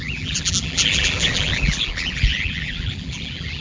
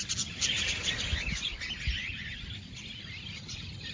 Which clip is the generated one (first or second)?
first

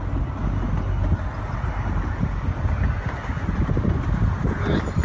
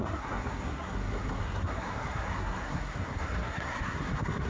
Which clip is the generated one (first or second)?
second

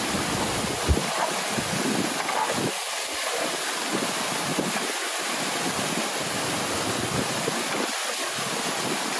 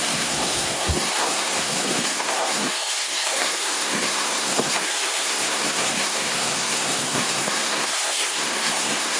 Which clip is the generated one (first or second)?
second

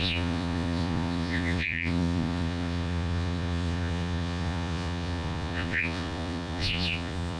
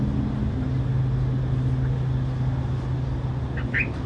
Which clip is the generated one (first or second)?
first